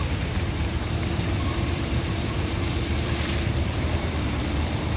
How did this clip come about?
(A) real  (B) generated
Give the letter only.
B